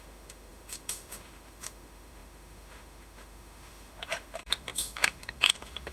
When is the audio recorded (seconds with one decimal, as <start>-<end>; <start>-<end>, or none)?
none

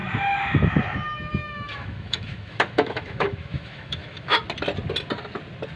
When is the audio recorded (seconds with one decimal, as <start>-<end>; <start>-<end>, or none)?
0.0-1.4; 4.4-5.8

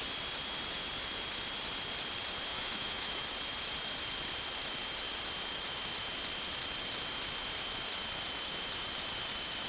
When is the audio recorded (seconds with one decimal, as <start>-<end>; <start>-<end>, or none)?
0.0-2.5; 3.2-9.7

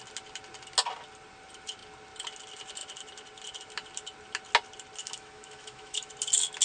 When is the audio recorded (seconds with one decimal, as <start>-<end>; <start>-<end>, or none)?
0.0-5.0; 6.1-6.6

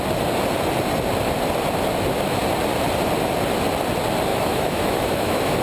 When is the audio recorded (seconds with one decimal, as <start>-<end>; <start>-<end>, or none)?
0.0-4.3

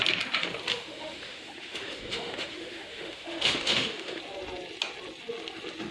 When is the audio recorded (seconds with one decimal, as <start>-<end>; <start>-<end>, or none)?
0.0-0.7; 4.2-5.9

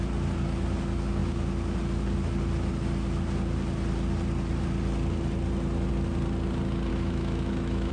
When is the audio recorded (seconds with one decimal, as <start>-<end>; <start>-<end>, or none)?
0.0-6.9

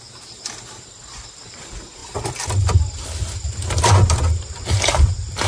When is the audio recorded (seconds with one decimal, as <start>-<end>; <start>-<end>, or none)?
0.0-5.5